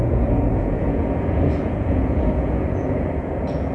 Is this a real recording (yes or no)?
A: no